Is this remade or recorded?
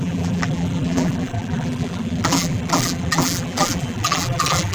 remade